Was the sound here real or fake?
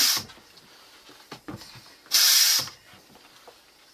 real